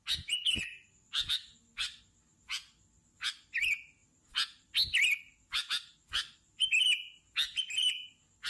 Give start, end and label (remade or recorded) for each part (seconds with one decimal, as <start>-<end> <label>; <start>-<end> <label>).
0.0-8.5 recorded